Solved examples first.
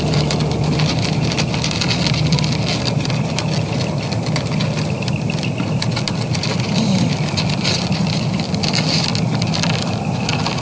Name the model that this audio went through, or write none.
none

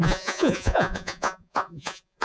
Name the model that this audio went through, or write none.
vocoder, Vocos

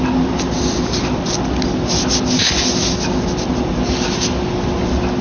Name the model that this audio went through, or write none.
none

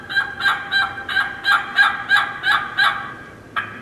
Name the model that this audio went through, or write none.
none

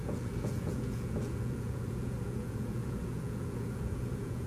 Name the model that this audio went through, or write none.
vocoder, Vocos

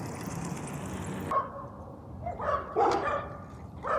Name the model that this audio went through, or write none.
none